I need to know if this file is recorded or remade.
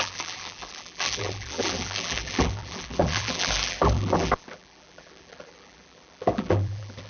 remade